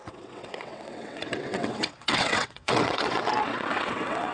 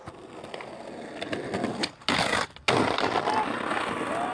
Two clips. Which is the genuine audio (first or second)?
second